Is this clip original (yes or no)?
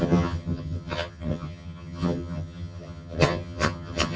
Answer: no